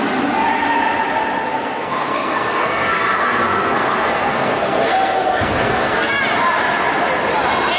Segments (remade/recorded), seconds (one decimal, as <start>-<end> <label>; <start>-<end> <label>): 0.0-1.5 recorded; 1.5-6.2 remade; 6.2-7.8 recorded